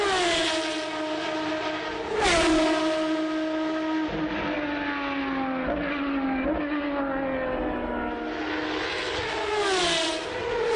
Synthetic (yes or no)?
no